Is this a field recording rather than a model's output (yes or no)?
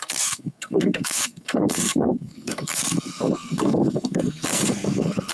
no